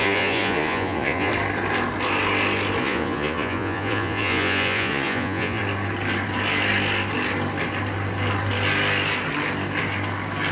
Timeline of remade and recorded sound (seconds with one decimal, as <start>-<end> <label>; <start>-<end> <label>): 0.0-1.3 remade; 1.3-2.8 recorded; 2.8-5.6 remade; 5.6-10.5 recorded